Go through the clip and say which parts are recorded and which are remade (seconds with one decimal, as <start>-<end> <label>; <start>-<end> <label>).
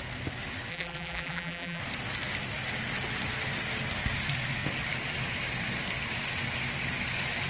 0.0-0.7 recorded; 0.7-1.8 remade; 1.8-7.5 recorded